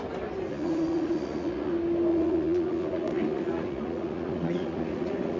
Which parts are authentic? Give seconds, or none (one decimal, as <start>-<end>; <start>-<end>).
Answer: 0.0-0.5; 1.7-2.1